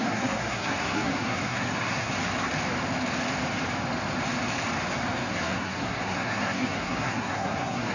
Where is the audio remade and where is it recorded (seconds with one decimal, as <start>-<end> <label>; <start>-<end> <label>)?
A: 0.0-2.1 remade; 2.1-5.3 recorded; 5.3-7.9 remade